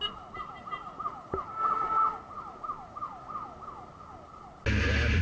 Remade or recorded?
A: recorded